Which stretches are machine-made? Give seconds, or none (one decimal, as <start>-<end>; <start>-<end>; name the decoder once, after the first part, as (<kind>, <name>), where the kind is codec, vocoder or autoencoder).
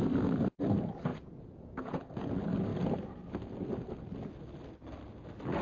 1.1-2.1 (vocoder, Vocos)